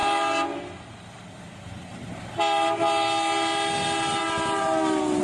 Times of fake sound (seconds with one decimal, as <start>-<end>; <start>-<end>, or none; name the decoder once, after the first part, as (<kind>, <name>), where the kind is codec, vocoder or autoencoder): none